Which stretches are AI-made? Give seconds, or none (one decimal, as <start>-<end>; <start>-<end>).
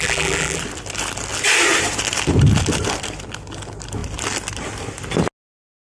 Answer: 0.0-0.6